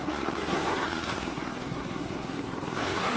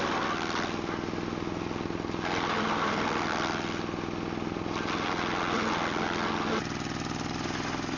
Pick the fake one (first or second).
first